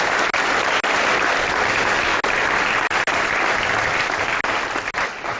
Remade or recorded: recorded